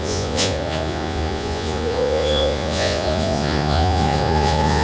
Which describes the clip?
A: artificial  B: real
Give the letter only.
A